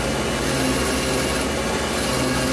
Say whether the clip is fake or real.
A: real